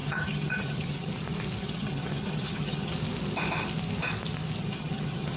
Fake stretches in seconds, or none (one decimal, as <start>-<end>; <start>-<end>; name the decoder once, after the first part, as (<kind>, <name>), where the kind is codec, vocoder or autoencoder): 0.0-1.1 (vocoder, HiFi-GAN); 1.6-2.9; 4.6-5.4